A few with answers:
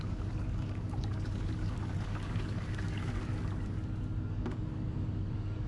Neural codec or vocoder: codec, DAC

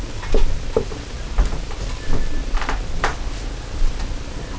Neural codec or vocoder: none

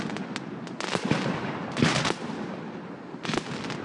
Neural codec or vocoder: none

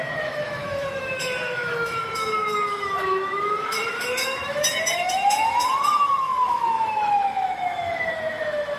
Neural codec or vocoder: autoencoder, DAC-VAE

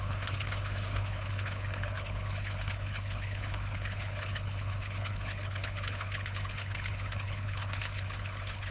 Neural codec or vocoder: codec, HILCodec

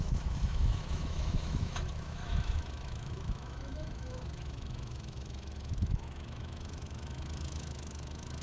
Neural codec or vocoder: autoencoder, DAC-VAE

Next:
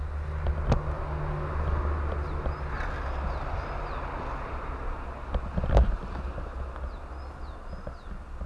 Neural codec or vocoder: none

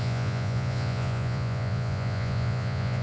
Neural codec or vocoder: vocoder, Vocos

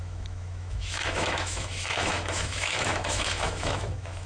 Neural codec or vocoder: autoencoder, DAC-VAE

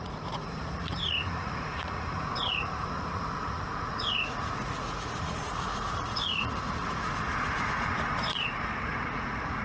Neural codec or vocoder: vocoder, Vocos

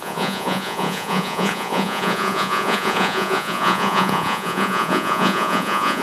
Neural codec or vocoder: vocoder, Vocos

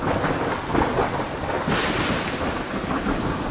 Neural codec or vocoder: none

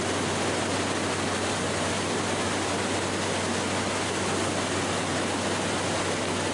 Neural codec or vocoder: none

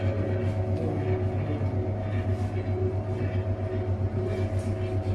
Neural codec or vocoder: none